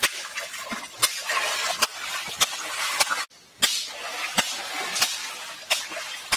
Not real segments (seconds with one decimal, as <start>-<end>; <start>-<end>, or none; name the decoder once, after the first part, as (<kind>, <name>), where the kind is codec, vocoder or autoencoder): none